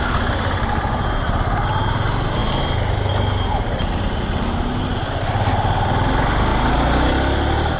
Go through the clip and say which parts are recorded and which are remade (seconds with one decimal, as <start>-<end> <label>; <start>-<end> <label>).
0.0-7.8 recorded